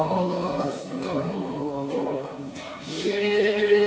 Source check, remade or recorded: remade